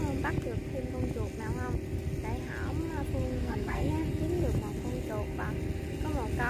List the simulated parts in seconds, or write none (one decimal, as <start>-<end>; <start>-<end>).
3.4-3.9